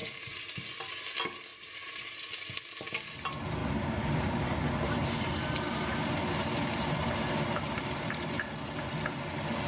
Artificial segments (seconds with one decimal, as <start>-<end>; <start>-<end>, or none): 0.0-0.5; 1.5-2.0; 3.6-8.8